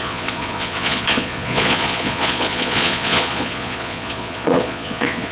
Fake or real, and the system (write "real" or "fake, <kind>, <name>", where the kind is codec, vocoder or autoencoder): fake, vocoder, Vocos